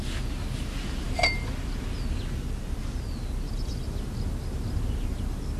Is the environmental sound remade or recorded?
recorded